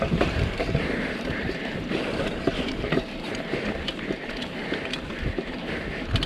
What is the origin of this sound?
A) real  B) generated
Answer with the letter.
B